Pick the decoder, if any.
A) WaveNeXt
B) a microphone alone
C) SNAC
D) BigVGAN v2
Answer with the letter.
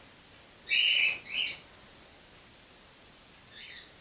B